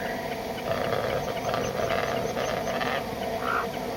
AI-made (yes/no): no